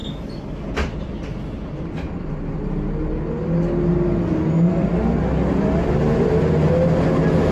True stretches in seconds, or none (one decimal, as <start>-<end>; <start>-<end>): 0.0-7.5